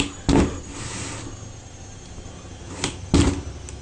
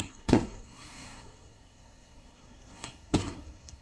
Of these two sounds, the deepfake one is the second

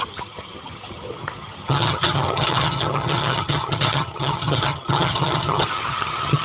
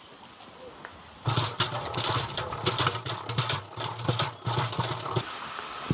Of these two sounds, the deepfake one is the first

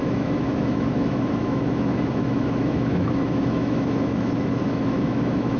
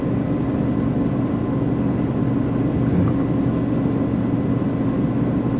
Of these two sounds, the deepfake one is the first